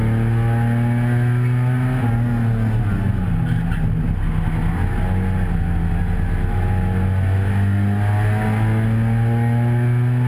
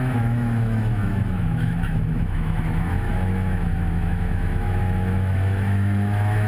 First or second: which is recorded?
first